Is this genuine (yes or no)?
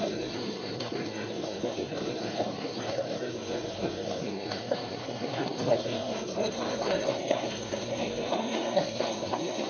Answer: no